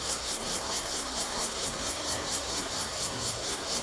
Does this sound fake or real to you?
fake